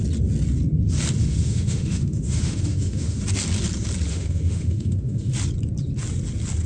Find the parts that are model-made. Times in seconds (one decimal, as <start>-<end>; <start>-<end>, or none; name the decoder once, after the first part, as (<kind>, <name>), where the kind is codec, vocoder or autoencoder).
1.2-3.2 (autoencoder, DAC-VAE); 4.1-5.3